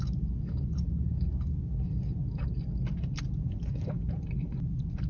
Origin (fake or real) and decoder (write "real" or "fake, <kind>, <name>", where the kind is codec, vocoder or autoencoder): real